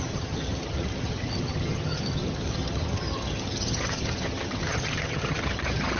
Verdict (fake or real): fake